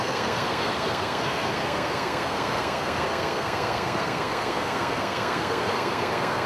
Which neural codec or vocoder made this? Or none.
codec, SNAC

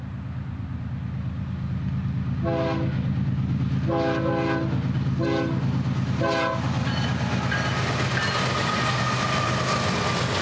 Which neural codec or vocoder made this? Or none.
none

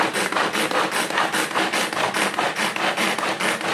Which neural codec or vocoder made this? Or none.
none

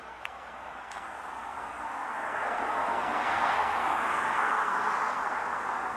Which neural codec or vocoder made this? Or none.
codec, SNAC